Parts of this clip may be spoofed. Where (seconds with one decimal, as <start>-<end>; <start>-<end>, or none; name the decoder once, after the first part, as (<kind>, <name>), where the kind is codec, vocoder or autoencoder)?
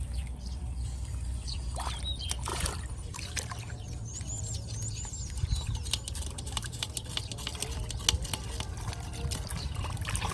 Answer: 2.5-6.8 (vocoder, BigVGAN v2); 9.5-10.3